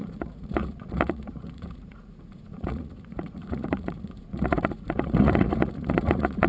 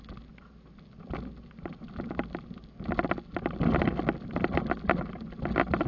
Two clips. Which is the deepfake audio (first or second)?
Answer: first